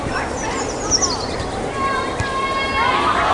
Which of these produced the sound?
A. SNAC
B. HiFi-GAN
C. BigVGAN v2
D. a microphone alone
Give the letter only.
D